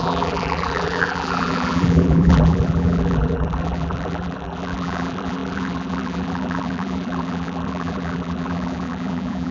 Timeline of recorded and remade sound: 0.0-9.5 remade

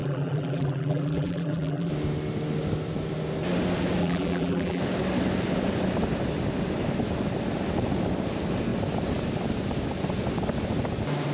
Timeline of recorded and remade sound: 0.0-1.9 remade; 1.9-4.0 recorded; 4.0-4.8 remade; 4.8-11.3 recorded

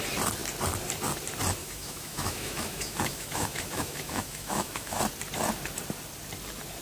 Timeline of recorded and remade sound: 0.0-1.6 recorded; 1.6-5.0 remade; 5.0-6.8 recorded

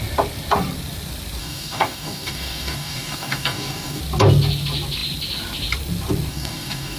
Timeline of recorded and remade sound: 0.0-1.4 recorded; 1.4-4.0 remade; 4.0-6.3 recorded; 6.3-7.0 remade

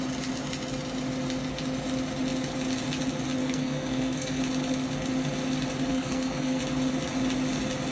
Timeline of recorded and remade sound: 0.0-3.4 recorded; 3.4-4.4 remade; 4.4-5.9 recorded; 5.9-6.6 remade; 6.6-7.9 recorded

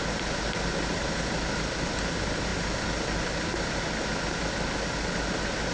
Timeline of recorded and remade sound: 0.0-5.7 recorded

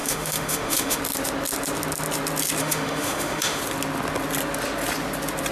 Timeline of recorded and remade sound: 0.0-1.0 remade; 1.0-2.6 recorded; 2.6-3.6 remade; 3.6-5.5 recorded

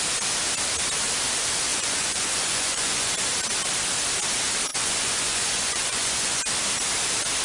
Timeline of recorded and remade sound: 0.0-1.7 recorded; 1.7-3.1 remade; 3.1-4.7 recorded; 4.7-6.4 remade; 6.4-7.4 recorded